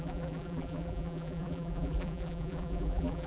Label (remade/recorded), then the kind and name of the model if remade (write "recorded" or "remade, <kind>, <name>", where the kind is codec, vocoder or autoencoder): remade, vocoder, BigVGAN v2